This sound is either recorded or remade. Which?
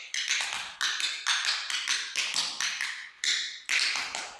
recorded